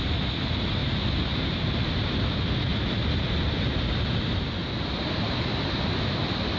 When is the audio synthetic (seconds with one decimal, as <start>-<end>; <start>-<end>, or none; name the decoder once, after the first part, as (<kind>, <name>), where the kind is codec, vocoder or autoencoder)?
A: 0.8-1.9 (vocoder, BigVGAN v2)